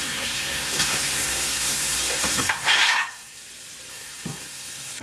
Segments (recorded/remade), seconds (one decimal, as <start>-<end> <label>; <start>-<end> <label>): 0.0-3.4 remade; 3.4-3.9 recorded; 3.9-5.0 remade